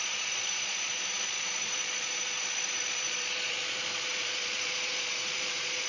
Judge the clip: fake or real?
fake